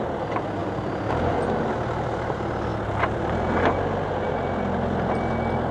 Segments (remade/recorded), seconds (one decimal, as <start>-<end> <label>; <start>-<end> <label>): 0.0-5.7 recorded